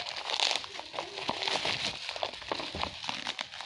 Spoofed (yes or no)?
no